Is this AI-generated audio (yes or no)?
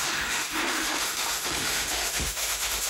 yes